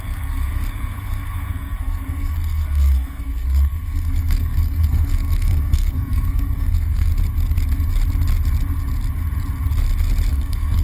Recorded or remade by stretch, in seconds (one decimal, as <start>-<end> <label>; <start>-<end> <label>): 0.0-7.1 remade; 7.1-10.3 recorded; 10.3-10.8 remade